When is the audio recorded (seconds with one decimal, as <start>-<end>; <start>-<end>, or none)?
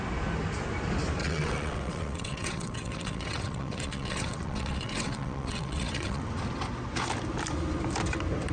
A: 0.0-1.2; 6.2-8.5